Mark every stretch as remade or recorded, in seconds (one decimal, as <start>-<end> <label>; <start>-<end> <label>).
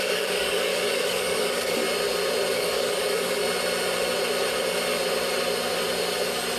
0.0-1.8 remade; 1.8-2.5 recorded; 2.5-3.4 remade; 3.4-6.6 recorded